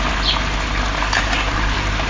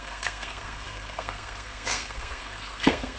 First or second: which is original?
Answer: first